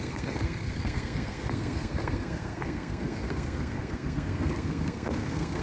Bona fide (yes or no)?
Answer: no